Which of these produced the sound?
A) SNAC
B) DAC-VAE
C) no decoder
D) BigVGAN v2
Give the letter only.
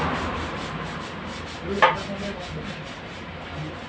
C